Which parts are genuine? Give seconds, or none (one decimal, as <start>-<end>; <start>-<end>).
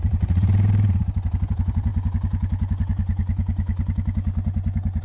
1.9-5.0